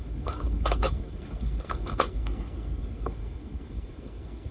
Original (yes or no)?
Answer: no